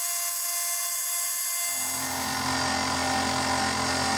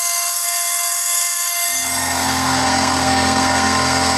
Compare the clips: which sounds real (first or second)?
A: first